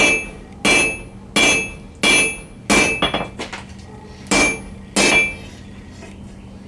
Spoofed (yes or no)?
no